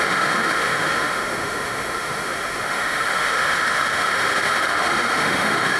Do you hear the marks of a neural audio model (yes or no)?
yes